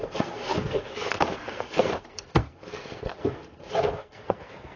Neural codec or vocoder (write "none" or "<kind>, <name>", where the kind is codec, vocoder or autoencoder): codec, SNAC